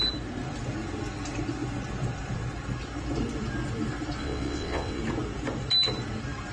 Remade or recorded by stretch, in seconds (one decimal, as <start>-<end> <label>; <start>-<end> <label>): 0.0-4.2 recorded; 4.2-5.0 remade; 5.0-6.5 recorded